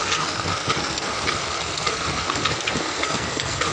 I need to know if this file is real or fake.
fake